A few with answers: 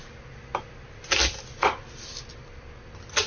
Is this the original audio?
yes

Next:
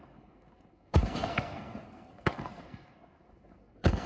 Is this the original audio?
no